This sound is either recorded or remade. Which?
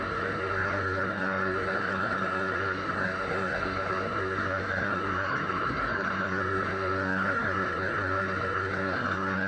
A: remade